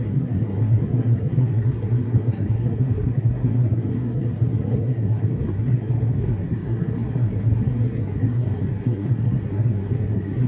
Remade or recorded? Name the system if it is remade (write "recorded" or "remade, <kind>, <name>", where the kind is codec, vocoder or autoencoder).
remade, codec, SNAC